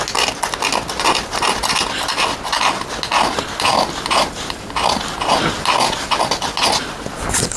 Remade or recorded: recorded